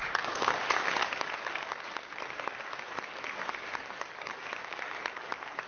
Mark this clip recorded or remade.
remade